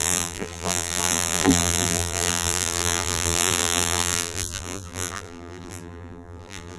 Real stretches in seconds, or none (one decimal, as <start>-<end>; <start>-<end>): none